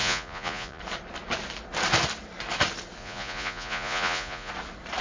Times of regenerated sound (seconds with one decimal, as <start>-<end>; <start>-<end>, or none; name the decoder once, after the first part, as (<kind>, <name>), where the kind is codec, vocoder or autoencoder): 0.0-0.8 (vocoder, Vocos); 3.0-4.5